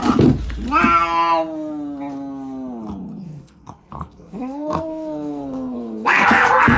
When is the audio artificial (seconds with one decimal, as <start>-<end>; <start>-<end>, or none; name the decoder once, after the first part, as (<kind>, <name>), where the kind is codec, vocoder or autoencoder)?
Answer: 3.2-6.8 (codec, SNAC)